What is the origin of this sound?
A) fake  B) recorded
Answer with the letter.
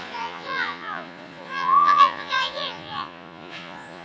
A